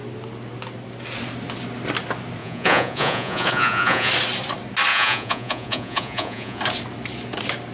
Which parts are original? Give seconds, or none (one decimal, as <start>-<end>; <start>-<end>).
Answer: 0.0-2.4; 4.1-4.9; 6.6-7.7